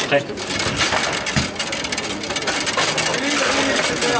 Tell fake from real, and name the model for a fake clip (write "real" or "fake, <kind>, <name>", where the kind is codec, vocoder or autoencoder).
real